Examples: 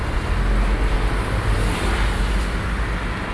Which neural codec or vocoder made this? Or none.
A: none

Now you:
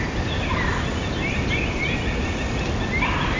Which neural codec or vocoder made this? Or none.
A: none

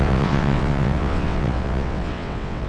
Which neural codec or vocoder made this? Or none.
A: vocoder, WaveNeXt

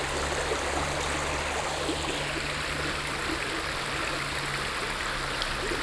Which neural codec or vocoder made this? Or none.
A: none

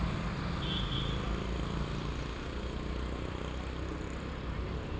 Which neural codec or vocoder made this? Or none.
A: none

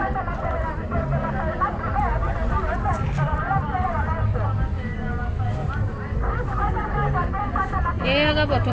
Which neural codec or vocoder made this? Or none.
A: none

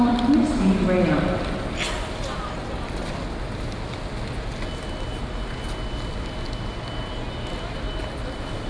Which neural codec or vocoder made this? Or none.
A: none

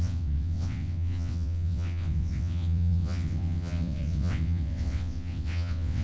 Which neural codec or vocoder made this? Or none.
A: vocoder, WaveNeXt